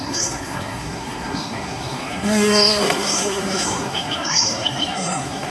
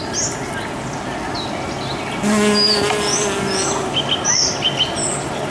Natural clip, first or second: second